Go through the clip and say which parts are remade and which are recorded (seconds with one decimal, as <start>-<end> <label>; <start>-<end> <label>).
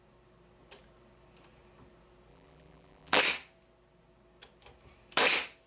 0.0-2.3 recorded; 2.3-3.2 remade; 3.2-5.7 recorded